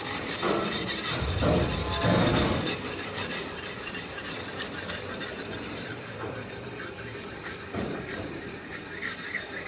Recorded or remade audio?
remade